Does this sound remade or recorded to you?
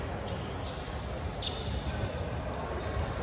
recorded